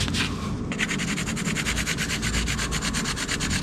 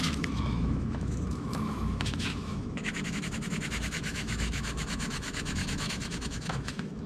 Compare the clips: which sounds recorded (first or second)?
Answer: first